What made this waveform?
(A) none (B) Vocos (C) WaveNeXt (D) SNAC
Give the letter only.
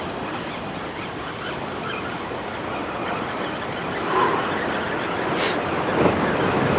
A